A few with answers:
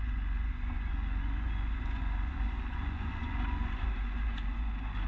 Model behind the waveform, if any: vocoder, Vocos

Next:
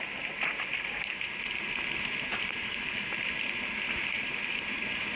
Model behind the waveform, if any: vocoder, BigVGAN v2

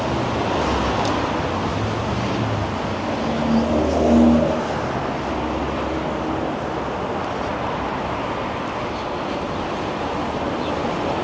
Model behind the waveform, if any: none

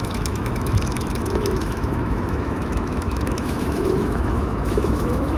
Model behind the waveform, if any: autoencoder, DAC-VAE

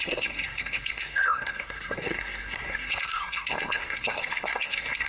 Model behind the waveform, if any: codec, SNAC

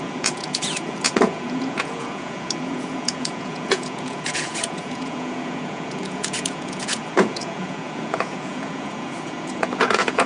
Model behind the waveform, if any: vocoder, Vocos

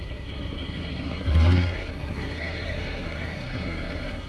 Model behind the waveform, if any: codec, SNAC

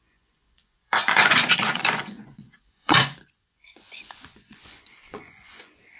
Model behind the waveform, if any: vocoder, Vocos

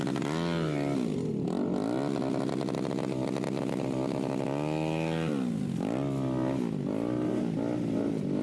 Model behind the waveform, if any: none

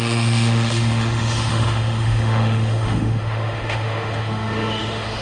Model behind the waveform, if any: autoencoder, DAC-VAE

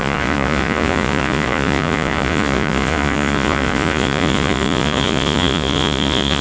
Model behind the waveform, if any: vocoder, Vocos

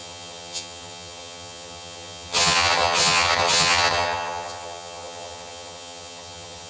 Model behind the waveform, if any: vocoder, HiFi-GAN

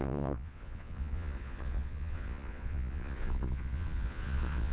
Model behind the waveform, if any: vocoder, Vocos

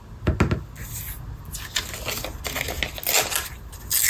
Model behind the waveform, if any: none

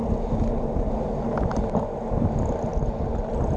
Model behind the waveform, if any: none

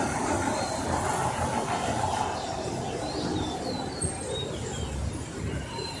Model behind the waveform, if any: none